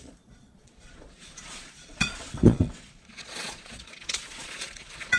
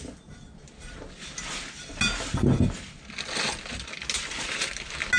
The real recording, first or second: second